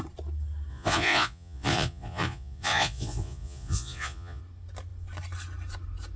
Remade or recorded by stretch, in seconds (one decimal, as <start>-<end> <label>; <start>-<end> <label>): 0.0-0.7 recorded; 0.7-4.4 remade; 4.4-6.2 recorded